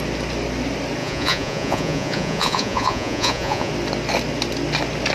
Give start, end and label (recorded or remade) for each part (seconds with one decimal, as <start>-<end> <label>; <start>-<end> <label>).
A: 0.0-1.0 recorded; 1.0-3.7 remade; 3.7-5.1 recorded